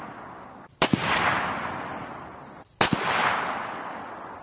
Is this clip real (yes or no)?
yes